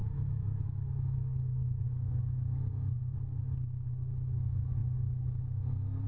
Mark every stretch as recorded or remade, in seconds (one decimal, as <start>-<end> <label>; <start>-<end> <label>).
0.0-2.2 remade; 2.2-6.1 recorded